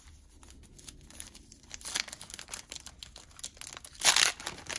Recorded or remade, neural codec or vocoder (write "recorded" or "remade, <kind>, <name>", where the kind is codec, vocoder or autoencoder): recorded